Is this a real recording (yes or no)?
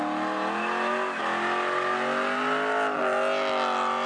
yes